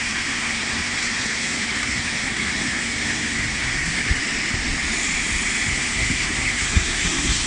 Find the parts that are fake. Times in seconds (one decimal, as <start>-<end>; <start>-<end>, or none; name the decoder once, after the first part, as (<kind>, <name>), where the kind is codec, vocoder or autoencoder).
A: 0.0-4.2 (codec, SNAC); 5.7-7.5